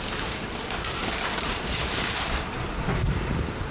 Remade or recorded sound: remade